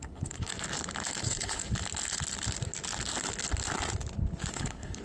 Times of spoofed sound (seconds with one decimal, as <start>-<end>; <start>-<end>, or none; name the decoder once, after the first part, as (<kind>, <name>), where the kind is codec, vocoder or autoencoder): 0.0-0.5 (codec, HILCodec); 1.2-1.6; 4.5-5.0